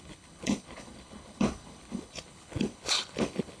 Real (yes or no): no